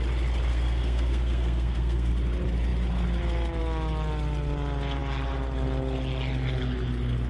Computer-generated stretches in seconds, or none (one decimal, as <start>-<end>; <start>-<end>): 0.5-2.1